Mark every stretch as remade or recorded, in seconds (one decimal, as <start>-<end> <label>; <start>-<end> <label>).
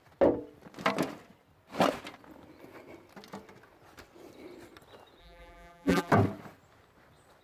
0.0-5.2 recorded; 5.2-6.1 remade; 6.1-7.4 recorded